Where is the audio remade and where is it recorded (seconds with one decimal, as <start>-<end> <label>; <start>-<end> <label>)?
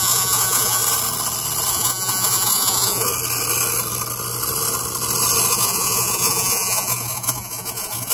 0.0-0.8 remade; 0.8-1.7 recorded; 1.7-3.1 remade; 3.1-5.5 recorded; 5.5-8.1 remade